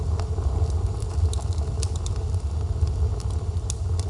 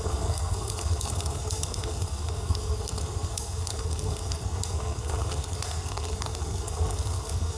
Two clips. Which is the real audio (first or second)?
first